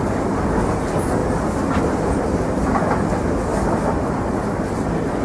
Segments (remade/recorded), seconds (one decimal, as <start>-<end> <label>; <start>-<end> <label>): 0.0-5.2 recorded